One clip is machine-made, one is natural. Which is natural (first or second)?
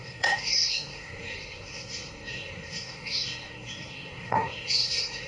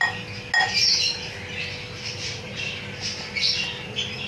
second